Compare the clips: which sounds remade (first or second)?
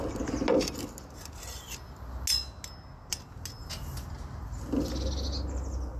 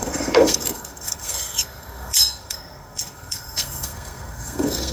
second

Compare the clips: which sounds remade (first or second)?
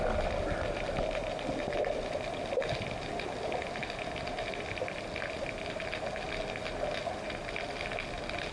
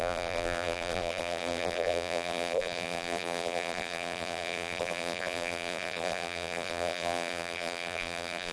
second